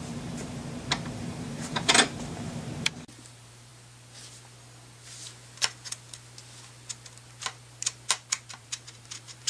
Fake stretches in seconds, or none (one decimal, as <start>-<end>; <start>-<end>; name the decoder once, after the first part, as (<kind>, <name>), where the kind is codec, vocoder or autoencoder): 0.0-0.6 (vocoder, BigVGAN v2); 1.2-3.7; 8.5-9.5